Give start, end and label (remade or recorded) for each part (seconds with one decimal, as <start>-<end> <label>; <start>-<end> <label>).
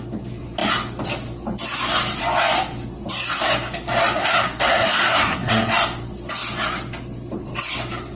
0.0-4.2 recorded; 4.2-5.5 remade; 5.5-8.2 recorded